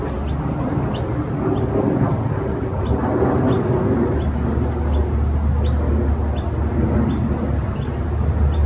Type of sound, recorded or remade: recorded